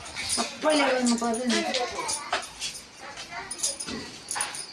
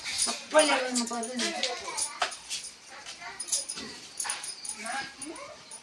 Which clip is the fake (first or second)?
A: second